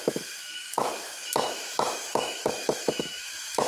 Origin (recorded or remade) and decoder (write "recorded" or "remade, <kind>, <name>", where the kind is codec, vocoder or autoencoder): remade, autoencoder, DAC-VAE